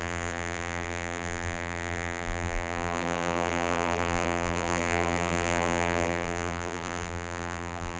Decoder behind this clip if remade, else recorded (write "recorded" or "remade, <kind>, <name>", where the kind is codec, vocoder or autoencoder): remade, vocoder, BigVGAN v2